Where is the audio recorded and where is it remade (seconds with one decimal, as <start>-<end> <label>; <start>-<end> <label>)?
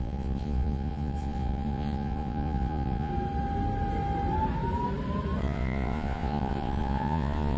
0.0-3.1 remade; 3.1-5.4 recorded; 5.4-7.6 remade